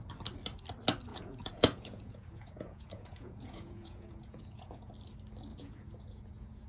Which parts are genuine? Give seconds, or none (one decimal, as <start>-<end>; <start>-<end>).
0.0-1.1; 4.9-5.5